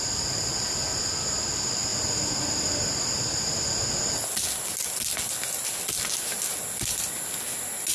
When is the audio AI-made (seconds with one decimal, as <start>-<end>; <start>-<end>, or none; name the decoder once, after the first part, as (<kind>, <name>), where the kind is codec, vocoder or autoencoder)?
none